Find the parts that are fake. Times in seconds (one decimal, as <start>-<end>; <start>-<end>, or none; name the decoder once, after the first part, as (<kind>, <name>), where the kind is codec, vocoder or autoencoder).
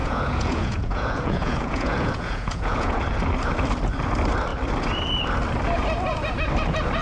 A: 0.0-3.0 (vocoder, Vocos)